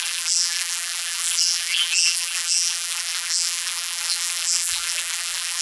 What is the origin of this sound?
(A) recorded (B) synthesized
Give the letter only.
B